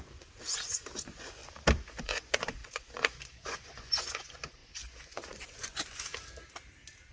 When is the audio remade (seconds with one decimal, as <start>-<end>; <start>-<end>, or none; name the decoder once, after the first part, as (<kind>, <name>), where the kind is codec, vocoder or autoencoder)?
0.0-1.4 (vocoder, Vocos); 2.0-6.1